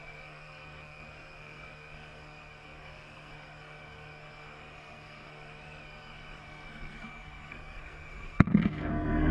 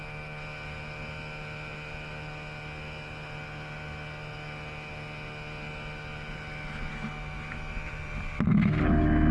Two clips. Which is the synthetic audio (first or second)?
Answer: first